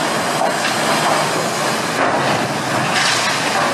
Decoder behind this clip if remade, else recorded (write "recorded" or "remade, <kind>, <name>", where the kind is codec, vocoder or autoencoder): recorded